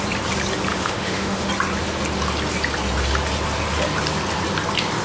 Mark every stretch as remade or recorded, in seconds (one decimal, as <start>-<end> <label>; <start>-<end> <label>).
0.0-0.7 recorded; 0.7-1.5 remade; 1.5-5.0 recorded